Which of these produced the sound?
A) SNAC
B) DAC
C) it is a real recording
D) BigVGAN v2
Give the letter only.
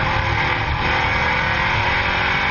C